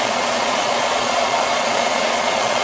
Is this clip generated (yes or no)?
yes